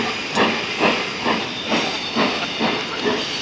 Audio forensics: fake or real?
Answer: real